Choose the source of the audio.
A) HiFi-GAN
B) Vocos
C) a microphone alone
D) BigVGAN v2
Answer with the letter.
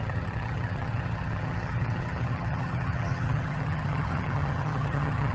A